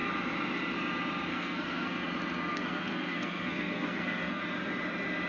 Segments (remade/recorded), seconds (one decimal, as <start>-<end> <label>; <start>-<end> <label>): 0.0-1.3 recorded; 1.3-2.0 remade; 2.0-2.5 recorded; 2.5-4.4 remade; 4.4-5.3 recorded